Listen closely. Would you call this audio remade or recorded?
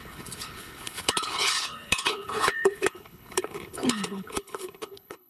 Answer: remade